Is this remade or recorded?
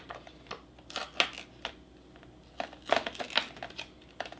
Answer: recorded